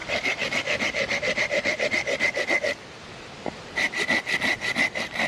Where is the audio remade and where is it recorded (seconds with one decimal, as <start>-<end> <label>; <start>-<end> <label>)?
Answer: 0.0-5.3 recorded